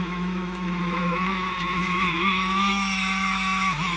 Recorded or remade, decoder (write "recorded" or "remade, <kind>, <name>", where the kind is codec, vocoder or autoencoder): remade, autoencoder, DAC-VAE